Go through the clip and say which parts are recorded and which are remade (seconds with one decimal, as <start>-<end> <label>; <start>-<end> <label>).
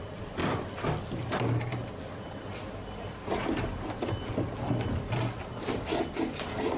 0.0-6.8 recorded